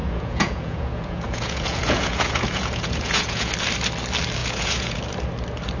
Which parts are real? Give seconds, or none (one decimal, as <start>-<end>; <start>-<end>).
3.5-4.4; 5.0-5.8